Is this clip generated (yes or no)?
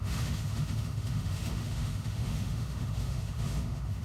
yes